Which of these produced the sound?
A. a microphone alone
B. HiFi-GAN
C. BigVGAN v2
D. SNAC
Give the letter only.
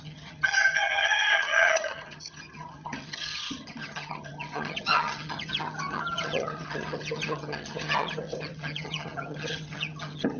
B